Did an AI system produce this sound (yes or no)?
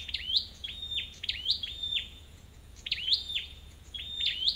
yes